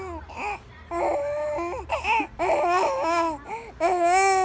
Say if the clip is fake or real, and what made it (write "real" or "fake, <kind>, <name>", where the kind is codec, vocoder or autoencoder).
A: real